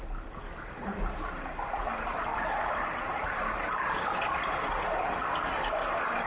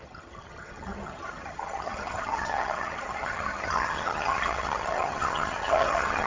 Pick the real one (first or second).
first